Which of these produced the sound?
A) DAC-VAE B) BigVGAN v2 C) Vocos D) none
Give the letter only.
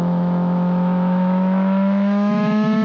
A